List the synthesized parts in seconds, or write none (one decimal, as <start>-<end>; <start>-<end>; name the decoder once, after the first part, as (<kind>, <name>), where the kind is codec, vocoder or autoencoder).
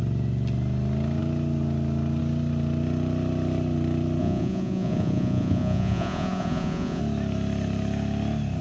4.2-7.0 (vocoder, Vocos)